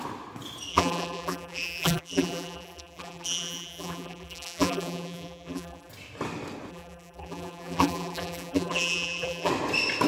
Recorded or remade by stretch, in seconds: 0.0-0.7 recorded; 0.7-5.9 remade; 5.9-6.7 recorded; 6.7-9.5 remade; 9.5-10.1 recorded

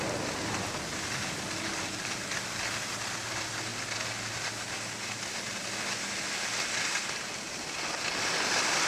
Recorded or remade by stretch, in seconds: 0.0-8.9 recorded

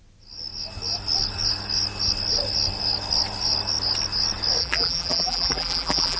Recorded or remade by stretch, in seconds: 0.0-4.6 recorded; 4.6-6.2 remade